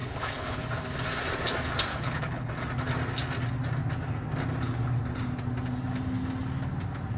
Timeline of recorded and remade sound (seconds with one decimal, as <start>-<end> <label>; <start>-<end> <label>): 0.0-0.7 remade; 0.7-1.9 recorded; 1.9-2.5 remade; 2.5-7.2 recorded